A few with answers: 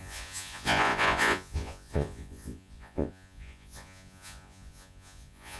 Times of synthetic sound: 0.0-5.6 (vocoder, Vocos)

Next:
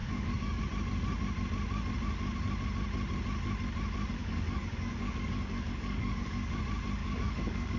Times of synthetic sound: 0.0-0.6 (codec, DAC); 4.2-6.6; 7.0-7.8

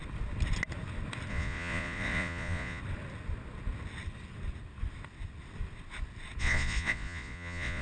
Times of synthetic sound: 1.3-2.8 (vocoder, Vocos); 6.4-7.8

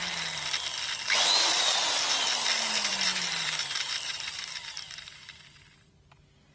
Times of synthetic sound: 2.9-5.0 (vocoder, BigVGAN v2)

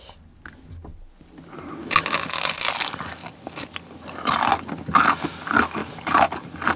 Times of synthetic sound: none

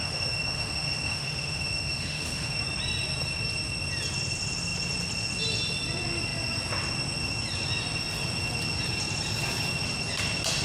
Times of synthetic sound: 0.0-2.5 (autoencoder, DAC-VAE)

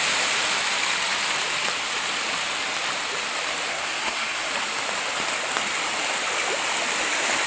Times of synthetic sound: 3.7-4.5 (codec, SNAC)